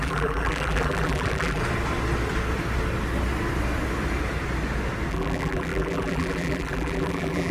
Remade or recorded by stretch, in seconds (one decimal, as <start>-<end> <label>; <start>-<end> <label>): 0.0-1.6 remade; 1.6-5.1 recorded; 5.1-7.5 remade